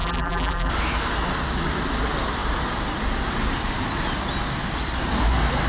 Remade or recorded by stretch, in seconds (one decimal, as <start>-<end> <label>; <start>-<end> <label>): 0.0-0.7 remade; 0.7-5.7 recorded